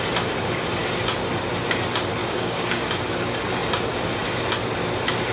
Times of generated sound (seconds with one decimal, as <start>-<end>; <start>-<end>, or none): 2.2-3.0